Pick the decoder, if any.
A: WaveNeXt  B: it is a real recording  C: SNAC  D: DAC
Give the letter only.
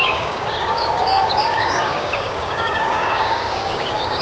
D